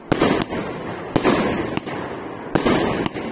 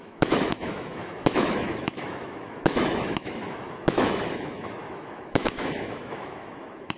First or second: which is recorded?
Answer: first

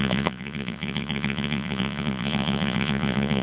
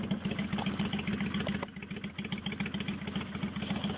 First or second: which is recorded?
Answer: second